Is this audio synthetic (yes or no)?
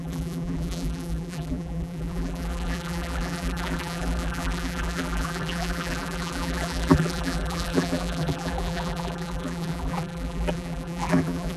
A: yes